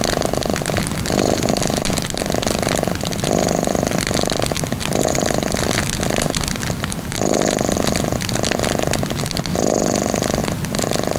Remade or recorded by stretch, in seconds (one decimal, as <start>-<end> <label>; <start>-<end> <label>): 0.0-11.2 recorded